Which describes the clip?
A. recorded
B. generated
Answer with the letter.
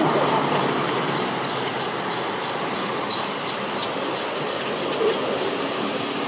A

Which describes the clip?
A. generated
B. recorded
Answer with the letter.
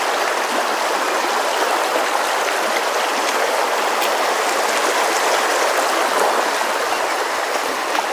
B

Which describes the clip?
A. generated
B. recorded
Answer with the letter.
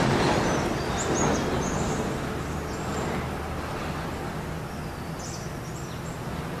B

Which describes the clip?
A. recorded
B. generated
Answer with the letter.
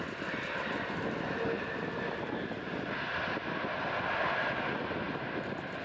A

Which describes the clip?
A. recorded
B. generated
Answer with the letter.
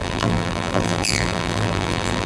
B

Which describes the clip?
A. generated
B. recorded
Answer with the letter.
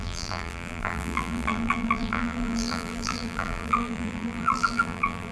A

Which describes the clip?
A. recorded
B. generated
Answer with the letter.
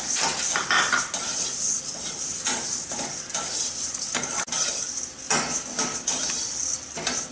A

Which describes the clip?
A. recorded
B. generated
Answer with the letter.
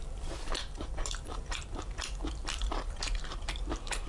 B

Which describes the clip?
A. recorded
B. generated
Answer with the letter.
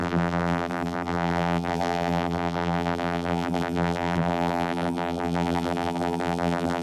B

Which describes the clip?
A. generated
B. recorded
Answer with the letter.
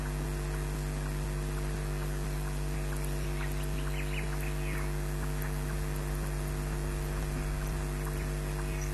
B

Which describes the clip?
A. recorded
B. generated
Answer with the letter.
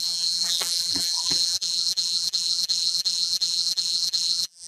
B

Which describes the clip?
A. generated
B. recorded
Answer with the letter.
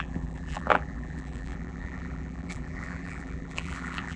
A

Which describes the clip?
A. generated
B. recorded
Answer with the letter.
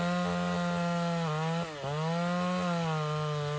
B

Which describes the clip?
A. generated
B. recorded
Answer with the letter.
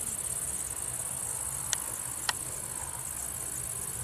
B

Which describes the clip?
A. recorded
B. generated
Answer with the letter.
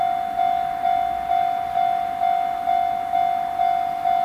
A